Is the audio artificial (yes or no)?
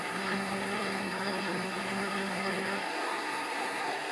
yes